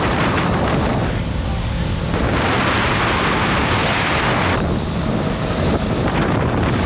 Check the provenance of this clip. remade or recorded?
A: recorded